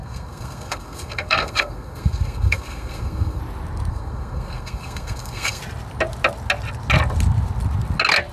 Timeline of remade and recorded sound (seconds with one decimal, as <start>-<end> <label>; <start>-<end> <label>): 0.0-3.4 remade; 3.4-3.9 recorded; 3.9-5.6 remade; 5.6-8.3 recorded